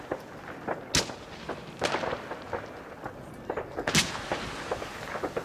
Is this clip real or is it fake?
real